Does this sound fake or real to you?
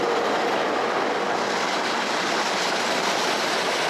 real